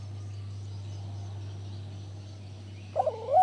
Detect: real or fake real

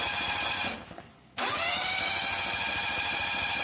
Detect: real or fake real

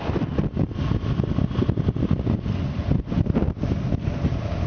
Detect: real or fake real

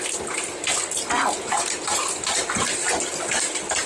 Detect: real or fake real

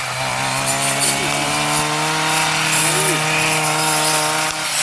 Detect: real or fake real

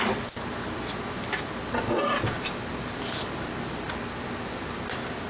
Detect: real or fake real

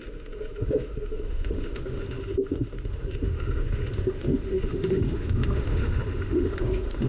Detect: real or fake fake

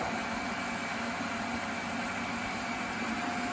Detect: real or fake real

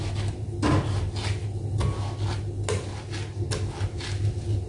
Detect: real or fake real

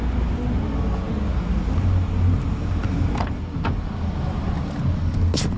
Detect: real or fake real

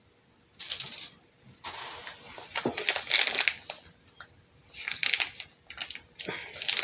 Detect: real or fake real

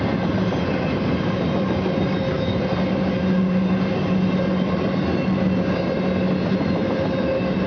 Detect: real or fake real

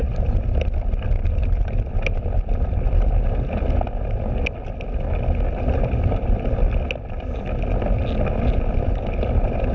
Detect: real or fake real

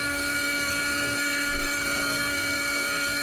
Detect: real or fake fake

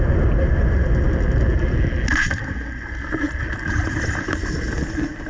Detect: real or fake real